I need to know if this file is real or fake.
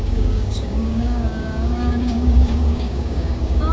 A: fake